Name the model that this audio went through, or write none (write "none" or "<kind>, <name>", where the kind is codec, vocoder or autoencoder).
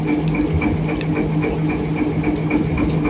none